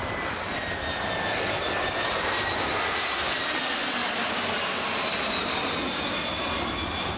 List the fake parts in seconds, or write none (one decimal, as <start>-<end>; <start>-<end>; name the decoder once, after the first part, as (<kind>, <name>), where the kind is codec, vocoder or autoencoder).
none